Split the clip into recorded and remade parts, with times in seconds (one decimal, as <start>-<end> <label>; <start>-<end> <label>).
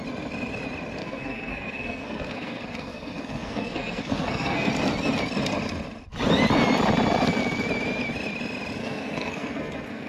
0.0-1.0 recorded; 1.0-4.7 remade; 4.7-8.8 recorded; 8.8-10.1 remade